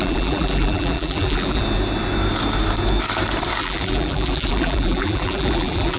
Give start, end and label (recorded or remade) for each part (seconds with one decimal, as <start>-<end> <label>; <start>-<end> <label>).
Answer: 0.0-1.6 remade; 1.6-3.6 recorded; 3.6-6.0 remade